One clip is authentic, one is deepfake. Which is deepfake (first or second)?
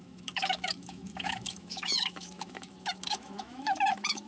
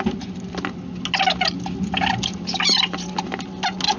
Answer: first